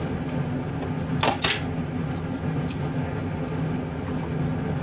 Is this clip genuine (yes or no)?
yes